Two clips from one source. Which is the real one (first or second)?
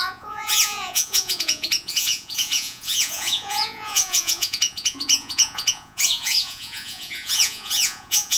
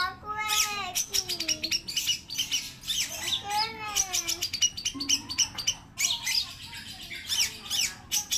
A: second